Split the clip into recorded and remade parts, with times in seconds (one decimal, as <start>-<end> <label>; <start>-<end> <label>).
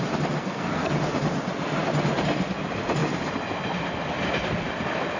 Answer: 0.0-0.4 recorded; 0.4-0.9 remade; 0.9-5.2 recorded